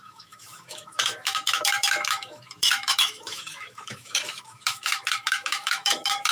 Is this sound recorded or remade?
remade